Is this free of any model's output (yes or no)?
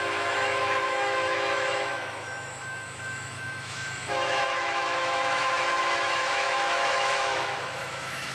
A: no